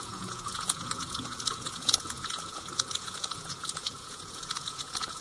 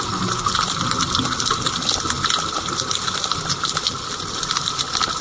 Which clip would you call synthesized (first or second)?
first